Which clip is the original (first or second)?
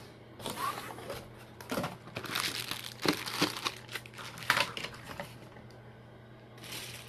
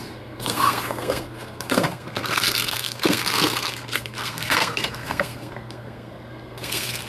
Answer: first